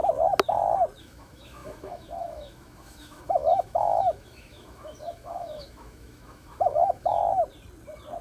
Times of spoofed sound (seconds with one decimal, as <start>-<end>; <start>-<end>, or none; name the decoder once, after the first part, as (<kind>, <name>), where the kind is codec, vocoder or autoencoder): 1.0-7.2 (autoencoder, DAC-VAE)